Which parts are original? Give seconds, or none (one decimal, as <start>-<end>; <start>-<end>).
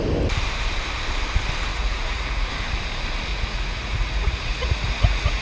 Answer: 0.0-1.7; 2.5-3.3